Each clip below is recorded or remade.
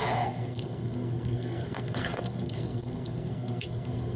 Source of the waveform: remade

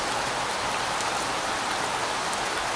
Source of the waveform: recorded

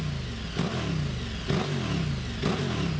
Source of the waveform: recorded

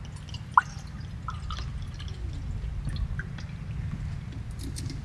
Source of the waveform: recorded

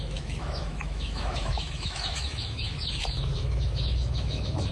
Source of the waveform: remade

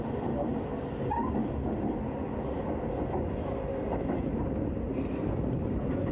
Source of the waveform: recorded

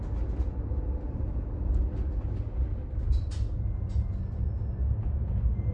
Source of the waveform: recorded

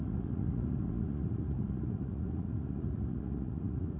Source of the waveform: remade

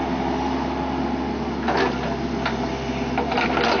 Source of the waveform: recorded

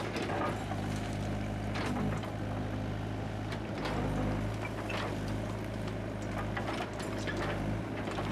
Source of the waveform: recorded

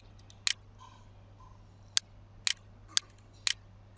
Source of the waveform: recorded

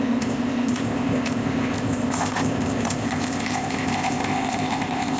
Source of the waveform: remade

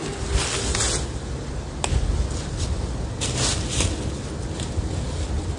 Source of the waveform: recorded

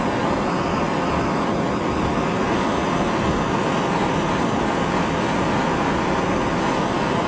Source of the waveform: recorded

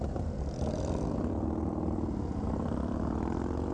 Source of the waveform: recorded